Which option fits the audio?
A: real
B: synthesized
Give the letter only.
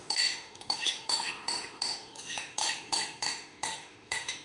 B